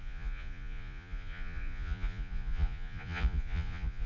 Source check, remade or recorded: remade